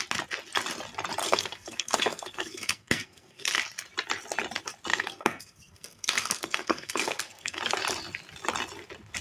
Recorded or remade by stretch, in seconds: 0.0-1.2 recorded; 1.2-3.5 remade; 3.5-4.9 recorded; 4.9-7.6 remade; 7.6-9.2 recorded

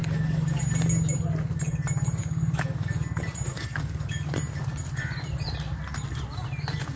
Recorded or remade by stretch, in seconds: 0.0-0.6 remade; 0.6-2.2 recorded; 2.2-2.9 remade; 2.9-3.5 recorded; 3.5-4.2 remade; 4.2-7.0 recorded